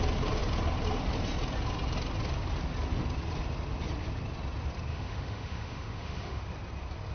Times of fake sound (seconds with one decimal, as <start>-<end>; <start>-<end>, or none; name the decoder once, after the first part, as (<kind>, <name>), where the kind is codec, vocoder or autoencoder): 4.9-6.4 (autoencoder, DAC-VAE)